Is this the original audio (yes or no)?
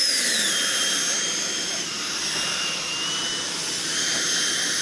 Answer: no